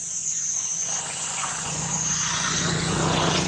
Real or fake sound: fake